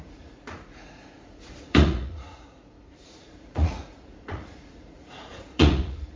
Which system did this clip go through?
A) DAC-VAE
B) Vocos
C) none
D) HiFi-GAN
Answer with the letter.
B